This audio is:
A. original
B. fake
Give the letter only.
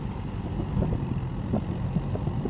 A